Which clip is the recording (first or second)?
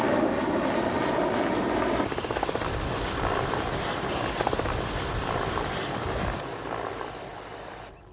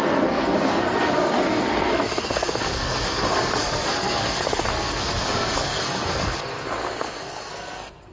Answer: first